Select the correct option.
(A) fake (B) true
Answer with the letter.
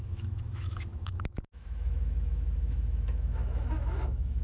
A